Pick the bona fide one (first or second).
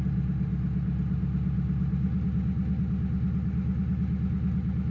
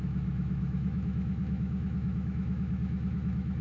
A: first